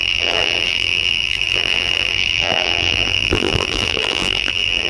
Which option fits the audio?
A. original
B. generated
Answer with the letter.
B